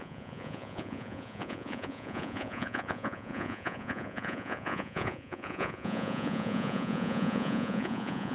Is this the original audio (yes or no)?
no